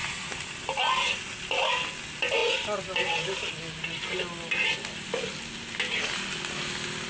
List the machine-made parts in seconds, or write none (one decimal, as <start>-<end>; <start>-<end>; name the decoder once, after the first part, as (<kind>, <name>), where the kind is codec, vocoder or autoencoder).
none